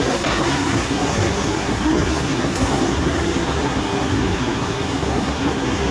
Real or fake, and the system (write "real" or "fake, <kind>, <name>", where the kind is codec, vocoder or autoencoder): fake, codec, SNAC